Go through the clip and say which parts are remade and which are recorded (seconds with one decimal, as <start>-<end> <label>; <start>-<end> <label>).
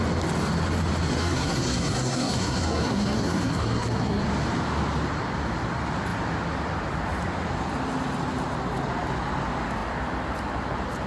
0.0-1.2 recorded; 1.2-4.2 remade; 4.2-11.1 recorded